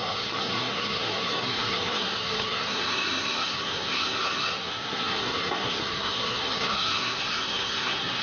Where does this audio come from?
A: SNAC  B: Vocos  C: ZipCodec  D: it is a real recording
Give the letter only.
A